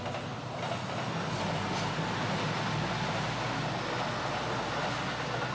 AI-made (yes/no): no